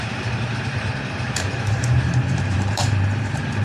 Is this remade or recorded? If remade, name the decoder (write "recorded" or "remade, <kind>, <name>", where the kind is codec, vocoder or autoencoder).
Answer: remade, vocoder, BigVGAN v2